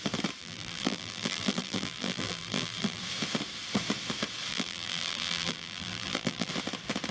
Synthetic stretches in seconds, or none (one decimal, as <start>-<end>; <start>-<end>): 0.4-3.0; 4.5-6.5